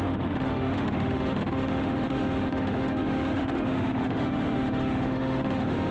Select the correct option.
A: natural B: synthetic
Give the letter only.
B